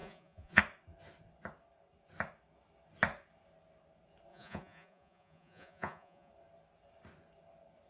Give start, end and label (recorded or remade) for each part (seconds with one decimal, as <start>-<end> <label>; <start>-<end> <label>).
0.0-0.6 remade; 0.6-4.3 recorded; 4.3-6.3 remade; 6.3-7.9 recorded